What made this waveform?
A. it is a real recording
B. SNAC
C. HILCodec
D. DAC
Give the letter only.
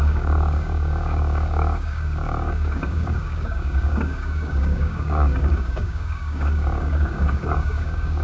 D